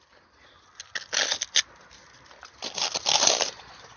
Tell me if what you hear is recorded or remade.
recorded